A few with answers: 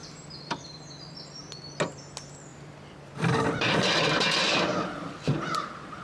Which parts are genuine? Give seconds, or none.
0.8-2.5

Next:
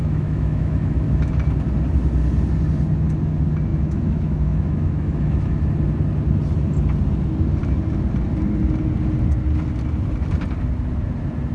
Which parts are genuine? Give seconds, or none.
1.3-3.7; 5.6-11.5

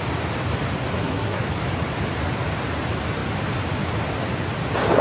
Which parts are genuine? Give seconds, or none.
0.0-0.9; 1.4-5.0

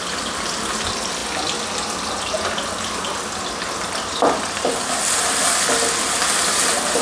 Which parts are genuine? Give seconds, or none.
0.0-7.0